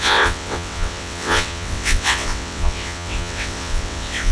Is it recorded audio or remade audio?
remade